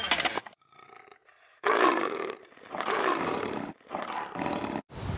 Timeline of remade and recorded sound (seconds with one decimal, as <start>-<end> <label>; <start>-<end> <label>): 0.0-1.2 recorded; 1.2-4.0 remade; 4.0-5.2 recorded